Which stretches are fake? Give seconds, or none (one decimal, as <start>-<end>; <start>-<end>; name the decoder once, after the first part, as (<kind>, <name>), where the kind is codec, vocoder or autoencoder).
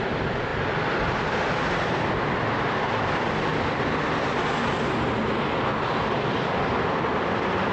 0.0-3.5 (vocoder, BigVGAN v2); 6.4-7.7